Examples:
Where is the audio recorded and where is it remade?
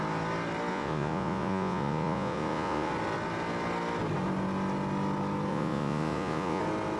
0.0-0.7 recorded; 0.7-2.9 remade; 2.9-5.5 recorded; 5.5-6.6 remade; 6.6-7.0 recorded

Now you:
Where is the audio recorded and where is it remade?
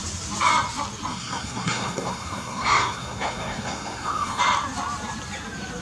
0.0-1.1 recorded; 1.1-4.4 remade; 4.4-5.8 recorded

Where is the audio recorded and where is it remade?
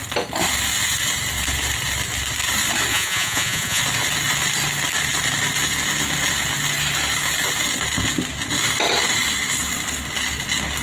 0.0-2.9 recorded; 2.9-3.8 remade; 3.8-10.8 recorded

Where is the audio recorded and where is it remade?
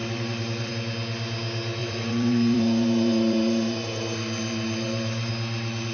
0.0-0.7 remade; 0.7-1.8 recorded; 1.8-5.3 remade; 5.3-5.9 recorded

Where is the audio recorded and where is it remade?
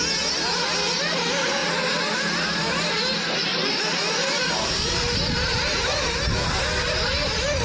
0.0-3.4 recorded; 3.4-7.6 remade